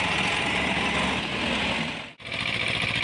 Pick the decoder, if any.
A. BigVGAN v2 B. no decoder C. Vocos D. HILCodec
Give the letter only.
B